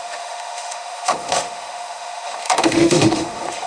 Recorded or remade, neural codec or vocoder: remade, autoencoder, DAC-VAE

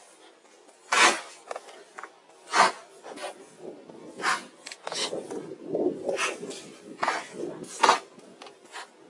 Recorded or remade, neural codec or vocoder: recorded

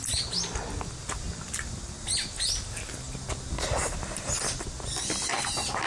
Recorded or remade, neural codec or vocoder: recorded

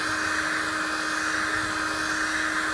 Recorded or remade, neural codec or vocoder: recorded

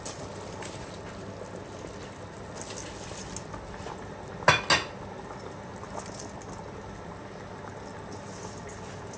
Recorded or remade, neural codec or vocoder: recorded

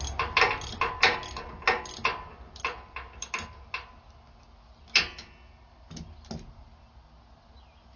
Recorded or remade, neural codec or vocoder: recorded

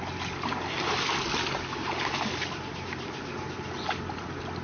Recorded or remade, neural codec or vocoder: recorded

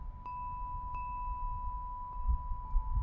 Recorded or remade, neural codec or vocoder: recorded